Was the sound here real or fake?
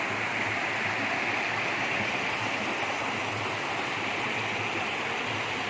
real